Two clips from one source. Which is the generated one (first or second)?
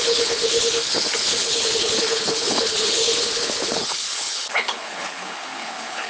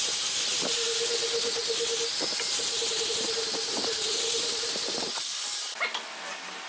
first